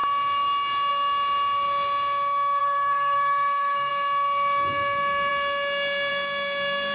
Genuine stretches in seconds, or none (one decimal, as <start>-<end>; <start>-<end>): 0.0-2.6; 3.9-6.9